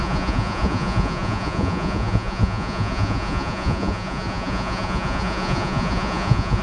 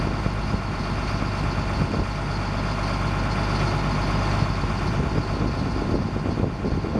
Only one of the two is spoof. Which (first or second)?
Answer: first